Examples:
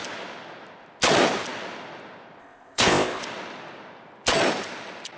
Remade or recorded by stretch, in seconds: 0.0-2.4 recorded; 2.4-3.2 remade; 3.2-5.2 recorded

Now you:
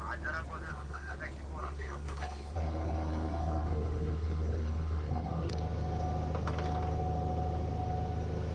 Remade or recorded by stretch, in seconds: 0.0-0.7 recorded; 0.7-1.2 remade; 1.2-1.6 recorded; 1.6-5.5 remade; 5.5-8.5 recorded

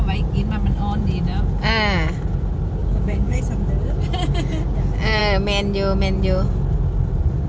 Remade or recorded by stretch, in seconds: 0.0-2.8 recorded; 2.8-3.4 remade; 3.4-7.5 recorded

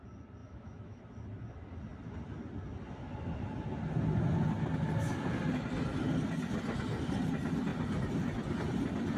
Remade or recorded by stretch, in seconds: 0.0-0.4 recorded; 0.4-1.0 remade; 1.0-9.2 recorded

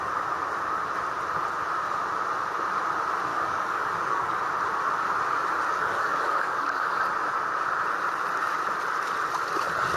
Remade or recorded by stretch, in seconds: 0.0-3.3 recorded; 3.3-4.4 remade; 4.4-5.7 recorded; 5.7-7.0 remade; 7.0-10.0 recorded

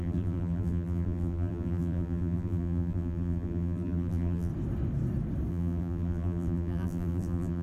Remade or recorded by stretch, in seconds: 0.0-4.5 remade; 4.5-5.5 recorded; 5.5-7.6 remade